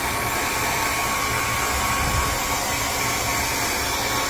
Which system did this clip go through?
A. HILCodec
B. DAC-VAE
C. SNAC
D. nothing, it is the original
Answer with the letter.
D